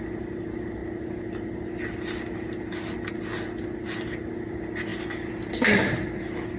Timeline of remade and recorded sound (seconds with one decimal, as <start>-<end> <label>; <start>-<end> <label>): 0.0-6.6 recorded